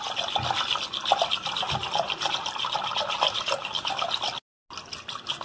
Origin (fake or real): real